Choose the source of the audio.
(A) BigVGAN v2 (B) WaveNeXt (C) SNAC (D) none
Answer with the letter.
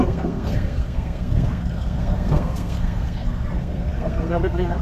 C